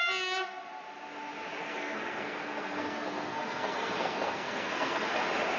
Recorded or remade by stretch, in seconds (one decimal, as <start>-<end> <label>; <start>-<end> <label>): 0.0-1.6 recorded; 1.6-5.0 remade; 5.0-5.6 recorded